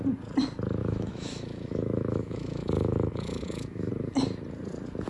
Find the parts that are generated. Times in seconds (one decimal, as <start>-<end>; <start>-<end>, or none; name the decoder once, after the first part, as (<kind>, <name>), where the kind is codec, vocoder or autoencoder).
0.8-3.9 (autoencoder, DAC-VAE)